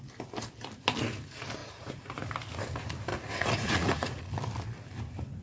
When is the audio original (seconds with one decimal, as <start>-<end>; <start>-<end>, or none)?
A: 0.0-1.6; 2.3-3.1; 4.3-5.4